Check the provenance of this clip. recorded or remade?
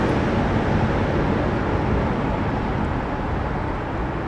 recorded